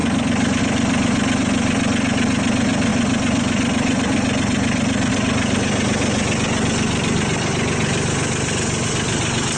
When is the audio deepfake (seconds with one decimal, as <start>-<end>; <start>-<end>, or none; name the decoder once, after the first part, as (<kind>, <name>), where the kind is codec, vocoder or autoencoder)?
2.9-5.1 (vocoder, BigVGAN v2)